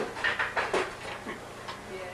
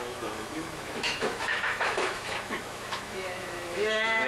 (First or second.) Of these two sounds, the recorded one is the first